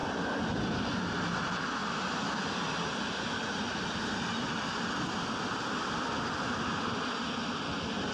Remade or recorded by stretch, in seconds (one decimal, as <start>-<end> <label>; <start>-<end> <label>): 0.0-8.1 recorded